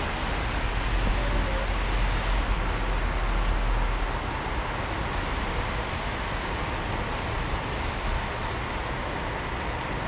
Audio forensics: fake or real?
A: real